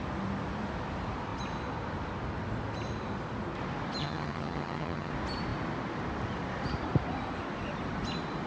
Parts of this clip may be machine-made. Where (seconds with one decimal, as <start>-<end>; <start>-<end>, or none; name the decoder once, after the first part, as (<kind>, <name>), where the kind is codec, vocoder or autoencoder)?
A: 4.0-5.1 (vocoder, HiFi-GAN)

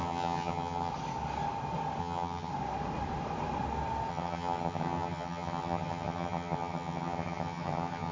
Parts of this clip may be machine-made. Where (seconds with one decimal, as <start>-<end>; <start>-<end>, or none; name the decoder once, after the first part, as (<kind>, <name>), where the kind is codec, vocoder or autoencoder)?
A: 0.0-0.9 (vocoder, HiFi-GAN); 2.0-2.5; 4.1-8.1

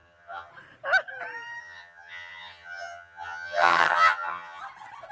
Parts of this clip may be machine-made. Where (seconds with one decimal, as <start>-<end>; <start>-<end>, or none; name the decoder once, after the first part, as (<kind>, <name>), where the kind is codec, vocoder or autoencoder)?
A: 0.0-0.5 (vocoder, HiFi-GAN); 1.6-4.6